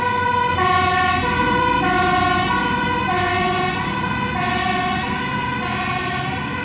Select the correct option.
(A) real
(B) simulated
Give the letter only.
A